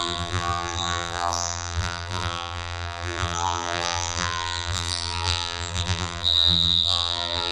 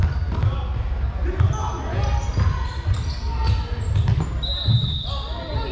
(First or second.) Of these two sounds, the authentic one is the second